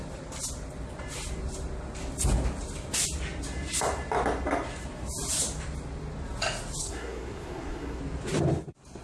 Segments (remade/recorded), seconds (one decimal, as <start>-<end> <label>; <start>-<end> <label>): 0.0-6.8 recorded; 6.8-8.0 remade; 8.0-9.0 recorded